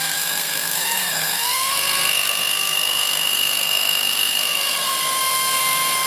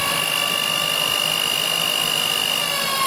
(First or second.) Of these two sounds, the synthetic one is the first